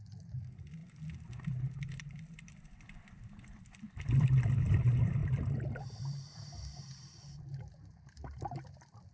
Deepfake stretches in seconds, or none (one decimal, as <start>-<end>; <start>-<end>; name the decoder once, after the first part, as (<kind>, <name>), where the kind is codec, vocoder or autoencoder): 0.0-9.1 (vocoder, BigVGAN v2)

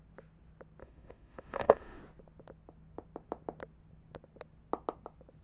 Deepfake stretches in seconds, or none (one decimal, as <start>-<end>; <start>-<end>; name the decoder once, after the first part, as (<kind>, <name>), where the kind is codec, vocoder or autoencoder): 0.8-2.0 (autoencoder, DAC-VAE)

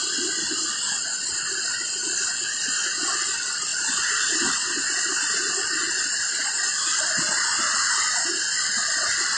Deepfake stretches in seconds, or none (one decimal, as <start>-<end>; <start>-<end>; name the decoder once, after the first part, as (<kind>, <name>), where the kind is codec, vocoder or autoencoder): 2.0-2.7 (vocoder, BigVGAN v2); 3.7-4.3

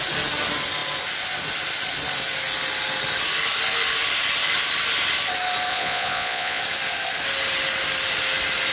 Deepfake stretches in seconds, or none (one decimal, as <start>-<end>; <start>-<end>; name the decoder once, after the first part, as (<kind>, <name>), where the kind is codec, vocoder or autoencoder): 5.7-6.6 (vocoder, Vocos)

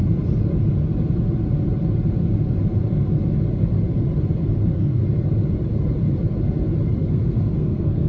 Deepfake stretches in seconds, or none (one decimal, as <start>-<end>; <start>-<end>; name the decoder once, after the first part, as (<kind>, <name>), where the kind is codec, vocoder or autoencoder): 4.4-5.0 (codec, SNAC); 7.0-8.1

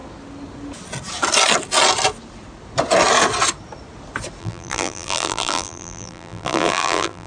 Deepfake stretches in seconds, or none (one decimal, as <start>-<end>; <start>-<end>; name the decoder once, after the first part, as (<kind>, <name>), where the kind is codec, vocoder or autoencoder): 4.4-7.3 (vocoder, BigVGAN v2)